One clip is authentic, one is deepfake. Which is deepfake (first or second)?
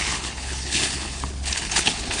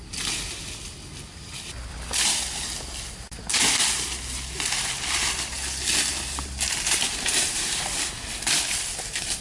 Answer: first